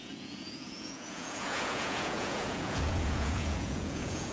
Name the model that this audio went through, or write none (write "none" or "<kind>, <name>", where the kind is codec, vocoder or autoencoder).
vocoder, Vocos